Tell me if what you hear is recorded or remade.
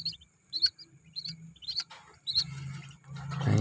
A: recorded